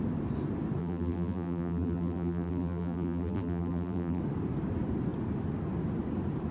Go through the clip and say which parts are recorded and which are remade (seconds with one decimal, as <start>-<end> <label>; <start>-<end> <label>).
0.0-0.8 recorded; 0.8-4.2 remade; 4.2-6.5 recorded